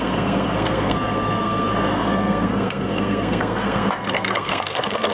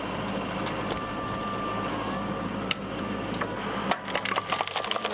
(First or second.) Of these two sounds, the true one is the second